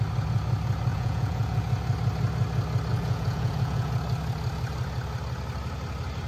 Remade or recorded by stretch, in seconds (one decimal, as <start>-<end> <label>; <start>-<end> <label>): 0.0-0.9 recorded; 0.9-1.6 remade; 1.6-2.9 recorded; 2.9-3.9 remade; 3.9-6.3 recorded